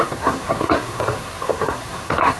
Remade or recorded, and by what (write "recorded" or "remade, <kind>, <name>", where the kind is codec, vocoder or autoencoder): remade, codec, SNAC